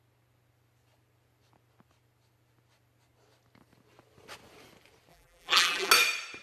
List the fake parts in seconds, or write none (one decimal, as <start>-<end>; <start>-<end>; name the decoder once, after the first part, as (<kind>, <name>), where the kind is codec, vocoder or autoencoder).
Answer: 5.1-5.9 (vocoder, BigVGAN v2)